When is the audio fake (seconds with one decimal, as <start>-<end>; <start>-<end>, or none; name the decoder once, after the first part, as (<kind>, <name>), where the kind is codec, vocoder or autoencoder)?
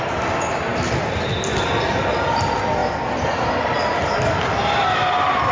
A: none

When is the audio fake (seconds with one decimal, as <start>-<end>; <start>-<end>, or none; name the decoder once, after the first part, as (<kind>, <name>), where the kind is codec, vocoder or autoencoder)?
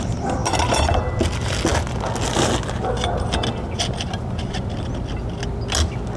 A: none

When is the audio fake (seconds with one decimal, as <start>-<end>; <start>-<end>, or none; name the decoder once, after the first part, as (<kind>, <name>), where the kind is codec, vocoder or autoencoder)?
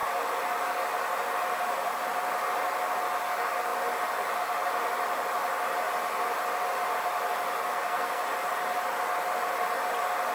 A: 7.7-8.2 (codec, SNAC)